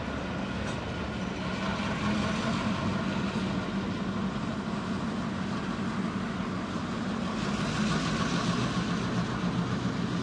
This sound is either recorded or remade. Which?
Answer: recorded